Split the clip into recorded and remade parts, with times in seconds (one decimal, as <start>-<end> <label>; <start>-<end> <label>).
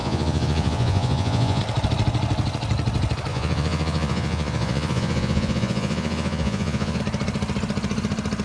0.0-1.6 remade; 1.6-3.3 recorded; 3.3-7.0 remade; 7.0-8.4 recorded